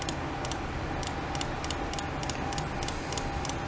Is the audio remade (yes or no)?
no